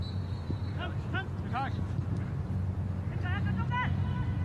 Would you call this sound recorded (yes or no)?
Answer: yes